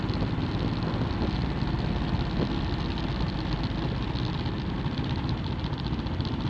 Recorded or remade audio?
recorded